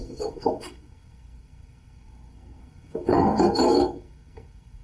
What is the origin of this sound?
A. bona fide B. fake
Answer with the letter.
B